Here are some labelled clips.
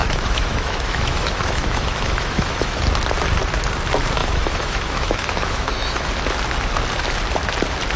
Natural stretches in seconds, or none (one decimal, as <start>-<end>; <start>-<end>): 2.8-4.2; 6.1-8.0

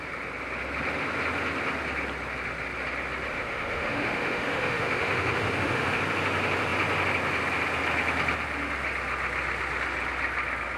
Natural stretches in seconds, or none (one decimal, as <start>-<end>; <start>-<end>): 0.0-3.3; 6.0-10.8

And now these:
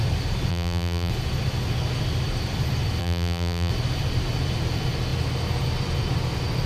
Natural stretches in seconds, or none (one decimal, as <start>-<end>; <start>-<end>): 0.0-0.5; 1.1-3.0; 3.7-6.7

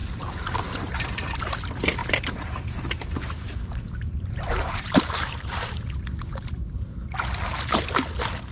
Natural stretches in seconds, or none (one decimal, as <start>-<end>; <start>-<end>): 1.1-2.0; 5.8-8.5

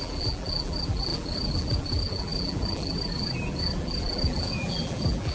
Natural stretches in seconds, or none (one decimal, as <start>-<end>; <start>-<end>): none